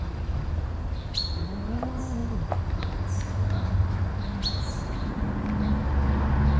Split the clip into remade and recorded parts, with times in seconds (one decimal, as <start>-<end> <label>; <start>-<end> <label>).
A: 0.0-2.2 recorded; 2.2-5.1 remade; 5.1-6.6 recorded